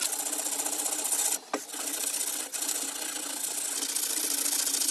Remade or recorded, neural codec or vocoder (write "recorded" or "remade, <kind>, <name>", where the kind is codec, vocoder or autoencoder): recorded